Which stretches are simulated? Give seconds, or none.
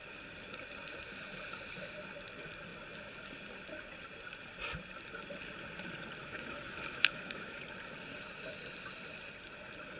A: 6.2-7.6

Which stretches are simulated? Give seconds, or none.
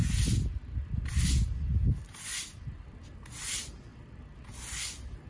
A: none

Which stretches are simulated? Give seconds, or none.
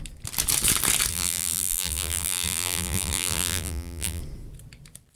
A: 1.1-4.2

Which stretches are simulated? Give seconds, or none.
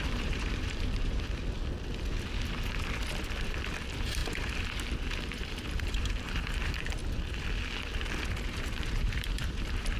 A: 0.0-1.4; 3.8-7.0; 8.4-10.0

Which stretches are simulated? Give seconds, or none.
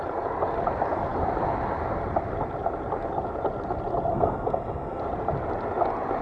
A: 4.1-5.0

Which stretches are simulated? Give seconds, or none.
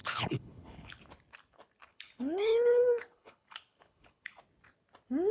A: 0.0-1.0; 1.9-4.3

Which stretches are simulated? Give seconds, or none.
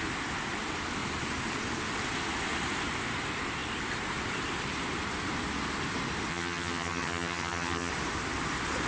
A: 6.3-7.9